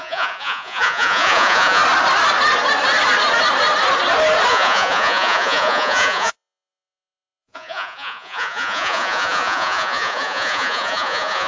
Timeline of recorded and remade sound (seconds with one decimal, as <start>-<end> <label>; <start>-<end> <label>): 0.0-1.8 remade; 1.8-4.5 recorded; 4.5-11.5 remade